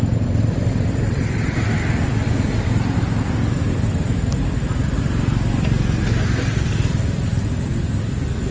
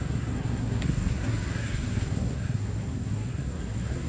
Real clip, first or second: first